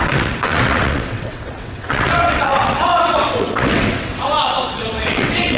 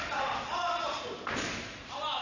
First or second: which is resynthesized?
first